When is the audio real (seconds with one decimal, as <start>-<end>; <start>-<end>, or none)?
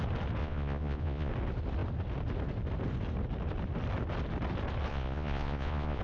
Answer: 0.0-0.4; 1.3-4.9